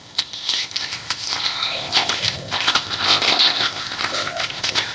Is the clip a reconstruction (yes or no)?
yes